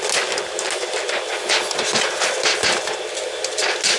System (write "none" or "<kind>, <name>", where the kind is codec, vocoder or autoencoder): none